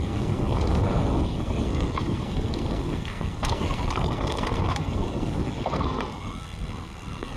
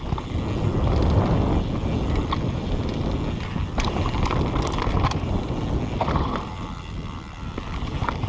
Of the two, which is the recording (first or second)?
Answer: second